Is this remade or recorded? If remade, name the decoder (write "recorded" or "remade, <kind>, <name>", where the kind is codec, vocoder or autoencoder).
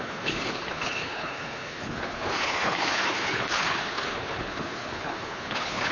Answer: remade, codec, HILCodec